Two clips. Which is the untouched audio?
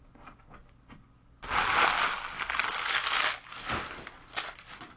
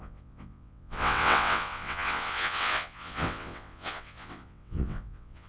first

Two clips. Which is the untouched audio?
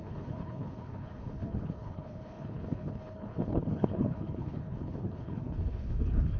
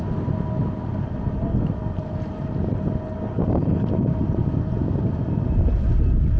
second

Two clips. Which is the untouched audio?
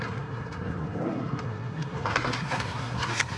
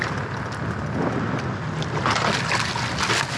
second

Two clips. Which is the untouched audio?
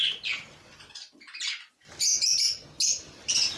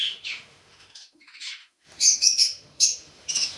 first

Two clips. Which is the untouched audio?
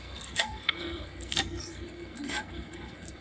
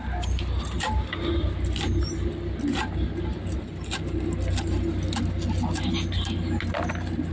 second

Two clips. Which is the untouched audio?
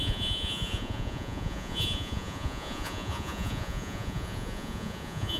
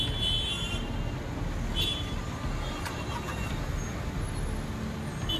second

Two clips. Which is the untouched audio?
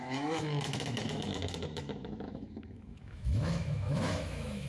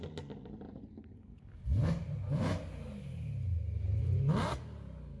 second